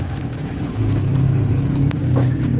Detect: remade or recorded remade